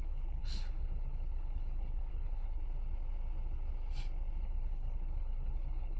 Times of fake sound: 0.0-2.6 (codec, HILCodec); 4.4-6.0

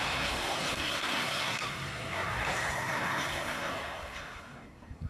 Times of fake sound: 0.0-5.1 (codec, SNAC)